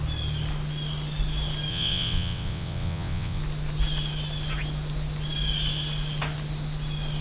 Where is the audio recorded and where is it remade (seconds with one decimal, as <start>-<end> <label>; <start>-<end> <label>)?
0.0-1.7 recorded; 1.7-3.4 remade; 3.4-7.2 recorded